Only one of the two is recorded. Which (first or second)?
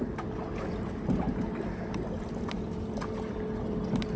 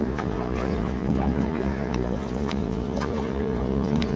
first